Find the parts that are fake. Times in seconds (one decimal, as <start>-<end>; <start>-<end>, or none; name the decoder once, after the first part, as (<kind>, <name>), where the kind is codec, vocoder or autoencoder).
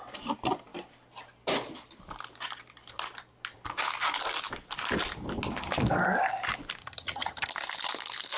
6.8-7.5 (vocoder, HiFi-GAN)